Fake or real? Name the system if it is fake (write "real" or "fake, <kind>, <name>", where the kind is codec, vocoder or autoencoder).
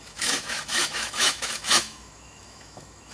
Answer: fake, autoencoder, DAC-VAE